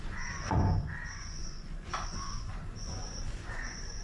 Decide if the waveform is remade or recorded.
remade